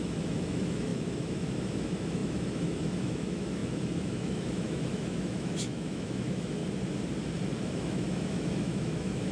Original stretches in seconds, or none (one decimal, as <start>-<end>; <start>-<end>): 6.6-7.7